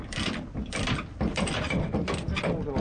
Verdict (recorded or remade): recorded